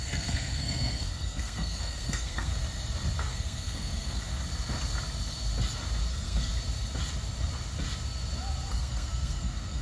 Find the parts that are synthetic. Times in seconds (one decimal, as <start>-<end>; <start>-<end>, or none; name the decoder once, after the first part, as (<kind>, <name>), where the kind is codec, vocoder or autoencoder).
0.0-2.5 (codec, SNAC); 3.2-4.3; 6.1-6.5; 8.7-9.8